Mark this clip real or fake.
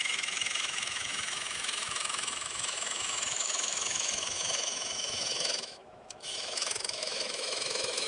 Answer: fake